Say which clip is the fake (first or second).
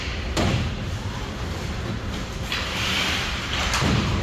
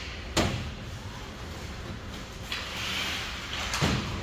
first